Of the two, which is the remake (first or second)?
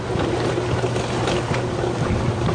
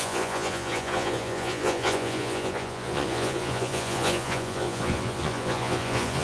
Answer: second